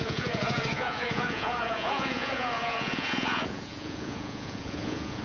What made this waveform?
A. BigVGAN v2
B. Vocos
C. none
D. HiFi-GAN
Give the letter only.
B